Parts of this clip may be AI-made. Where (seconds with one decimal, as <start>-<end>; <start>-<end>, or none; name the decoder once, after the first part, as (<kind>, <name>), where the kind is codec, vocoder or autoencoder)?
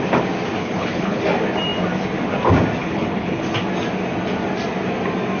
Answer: 0.6-1.2 (codec, HILCodec); 2.8-3.4